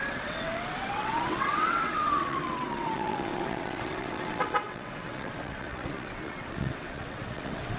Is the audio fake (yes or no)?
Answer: yes